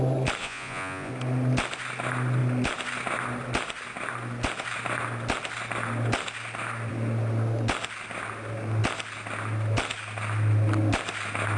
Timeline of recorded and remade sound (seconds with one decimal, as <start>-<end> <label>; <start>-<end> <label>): 0.0-0.4 recorded; 0.4-1.1 remade; 1.1-11.6 recorded